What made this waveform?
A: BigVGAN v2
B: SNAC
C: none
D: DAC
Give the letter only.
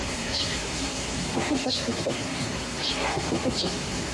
B